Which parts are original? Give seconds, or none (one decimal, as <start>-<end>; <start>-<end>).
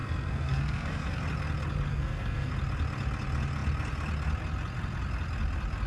1.2-1.9; 2.5-5.9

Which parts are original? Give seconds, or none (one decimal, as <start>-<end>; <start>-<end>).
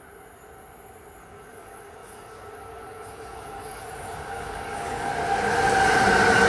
0.0-1.2; 5.1-6.5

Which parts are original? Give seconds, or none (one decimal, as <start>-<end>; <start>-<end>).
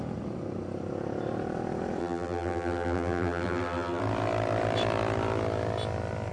0.0-2.0; 4.0-6.3